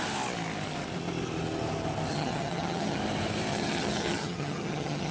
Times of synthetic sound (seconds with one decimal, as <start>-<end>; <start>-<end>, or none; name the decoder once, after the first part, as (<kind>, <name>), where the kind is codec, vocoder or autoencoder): 2.1-3.0 (vocoder, HiFi-GAN); 3.5-5.1